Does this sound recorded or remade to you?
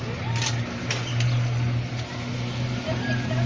recorded